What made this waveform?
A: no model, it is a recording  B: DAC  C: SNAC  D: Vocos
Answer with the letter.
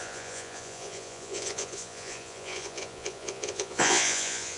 D